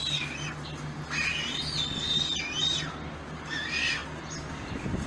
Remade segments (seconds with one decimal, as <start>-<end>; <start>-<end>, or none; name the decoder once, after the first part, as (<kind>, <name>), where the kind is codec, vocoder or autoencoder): none